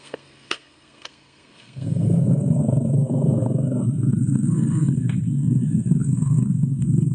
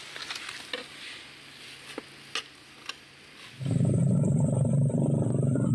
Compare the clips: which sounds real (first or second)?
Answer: second